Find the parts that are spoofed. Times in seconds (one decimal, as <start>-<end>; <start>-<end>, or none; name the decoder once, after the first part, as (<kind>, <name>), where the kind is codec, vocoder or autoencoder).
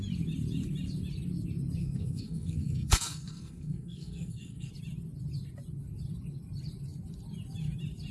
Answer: 1.8-4.7 (codec, SNAC)